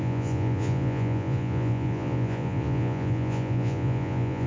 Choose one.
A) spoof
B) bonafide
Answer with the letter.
A